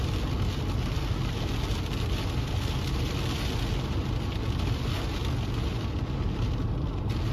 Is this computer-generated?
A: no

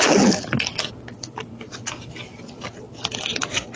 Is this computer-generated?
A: no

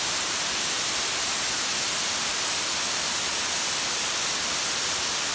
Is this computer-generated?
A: no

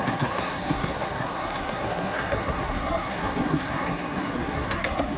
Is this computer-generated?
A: yes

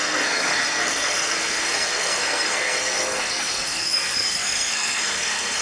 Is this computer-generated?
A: yes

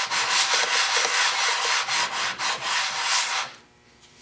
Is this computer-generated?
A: no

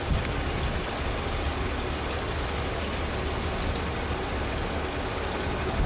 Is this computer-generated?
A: no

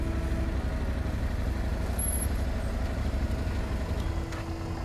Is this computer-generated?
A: no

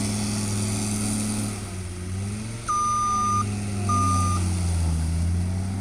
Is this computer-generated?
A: no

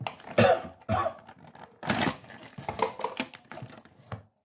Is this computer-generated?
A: no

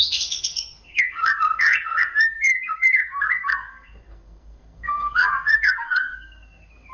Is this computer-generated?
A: yes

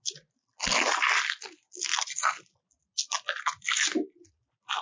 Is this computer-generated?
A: no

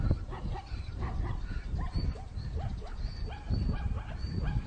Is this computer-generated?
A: no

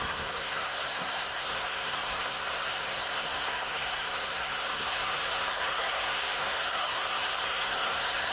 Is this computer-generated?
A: yes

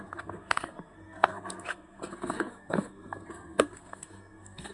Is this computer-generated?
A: yes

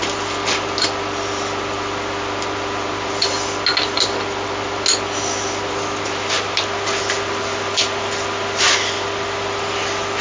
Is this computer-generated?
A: no